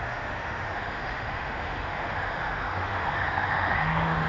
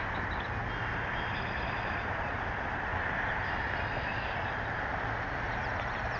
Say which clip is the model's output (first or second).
first